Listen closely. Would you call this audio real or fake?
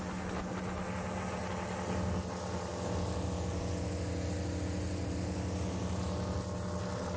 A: real